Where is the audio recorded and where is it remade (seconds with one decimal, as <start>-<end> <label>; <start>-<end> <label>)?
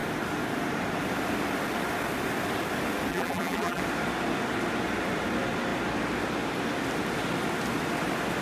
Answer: 0.0-3.1 recorded; 3.1-3.8 remade; 3.8-8.4 recorded